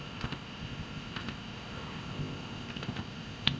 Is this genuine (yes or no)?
no